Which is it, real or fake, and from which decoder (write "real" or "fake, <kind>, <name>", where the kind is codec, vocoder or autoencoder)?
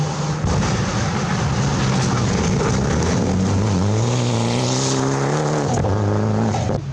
real